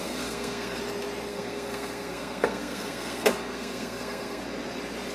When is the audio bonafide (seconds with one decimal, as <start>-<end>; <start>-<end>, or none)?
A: 0.8-1.3; 4.4-5.1